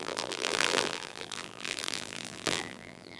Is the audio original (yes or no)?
no